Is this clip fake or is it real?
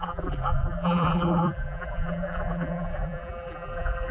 fake